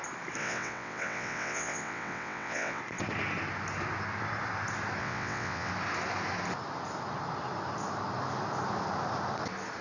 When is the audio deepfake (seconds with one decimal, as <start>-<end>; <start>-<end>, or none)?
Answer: 0.4-2.8; 5.0-5.7